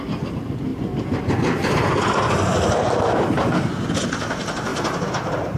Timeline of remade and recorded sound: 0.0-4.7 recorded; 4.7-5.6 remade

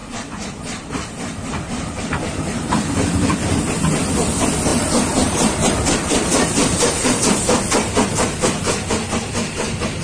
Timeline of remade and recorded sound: 0.0-3.3 remade; 3.3-4.7 recorded; 4.7-7.2 remade; 7.2-10.0 recorded

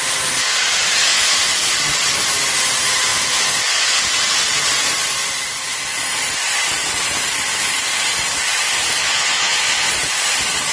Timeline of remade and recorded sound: 0.0-1.1 recorded; 1.1-1.7 remade; 1.7-3.1 recorded; 3.1-4.0 remade; 4.0-9.0 recorded; 9.0-9.9 remade; 9.9-10.7 recorded

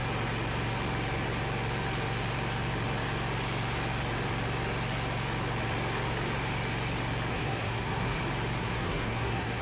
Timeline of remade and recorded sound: 0.0-7.3 recorded; 7.3-8.2 remade; 8.2-8.6 recorded; 8.6-9.6 remade